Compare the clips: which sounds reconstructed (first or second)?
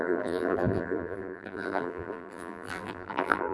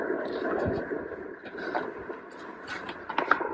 first